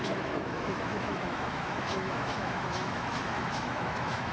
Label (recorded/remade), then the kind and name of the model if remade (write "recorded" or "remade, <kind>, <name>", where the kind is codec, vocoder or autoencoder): remade, autoencoder, DAC-VAE